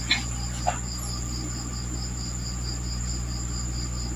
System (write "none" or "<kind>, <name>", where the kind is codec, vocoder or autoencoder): none